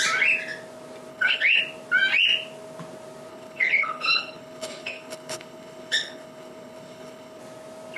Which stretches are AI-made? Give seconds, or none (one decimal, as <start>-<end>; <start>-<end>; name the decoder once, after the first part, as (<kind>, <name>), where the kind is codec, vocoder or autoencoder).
1.1-1.6 (codec, HILCodec); 3.3-7.4